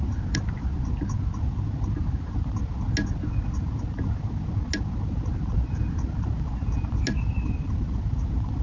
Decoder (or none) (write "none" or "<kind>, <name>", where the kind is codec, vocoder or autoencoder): none